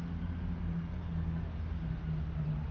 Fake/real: real